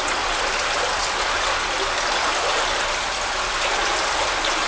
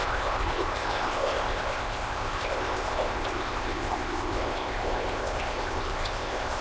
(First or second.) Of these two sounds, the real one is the first